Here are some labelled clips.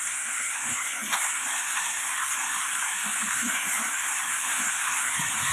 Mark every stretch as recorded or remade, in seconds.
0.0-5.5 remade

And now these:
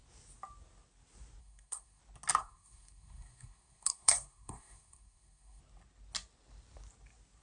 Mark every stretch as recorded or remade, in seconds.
0.0-1.4 recorded; 1.4-2.0 remade; 2.0-2.4 recorded; 2.4-5.6 remade; 5.6-7.4 recorded